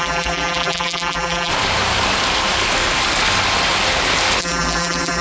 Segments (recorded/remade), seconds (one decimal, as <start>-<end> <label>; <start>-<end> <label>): 0.0-1.5 remade; 1.5-4.4 recorded; 4.4-5.2 remade